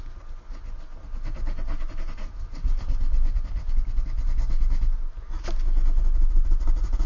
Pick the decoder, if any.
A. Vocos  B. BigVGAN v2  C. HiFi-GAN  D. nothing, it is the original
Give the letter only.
D